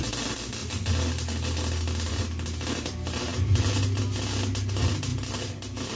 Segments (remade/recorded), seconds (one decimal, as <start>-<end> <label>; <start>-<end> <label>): 0.0-0.6 remade; 0.6-2.1 recorded; 2.1-5.1 remade; 5.1-6.0 recorded